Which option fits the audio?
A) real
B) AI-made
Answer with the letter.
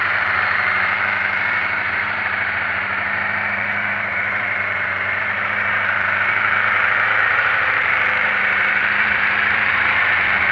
B